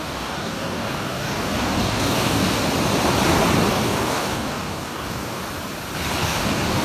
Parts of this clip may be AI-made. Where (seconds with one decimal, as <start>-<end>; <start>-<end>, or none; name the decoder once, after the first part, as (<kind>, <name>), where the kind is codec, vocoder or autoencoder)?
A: 0.0-2.6 (codec, DAC); 3.7-5.4; 6.2-6.8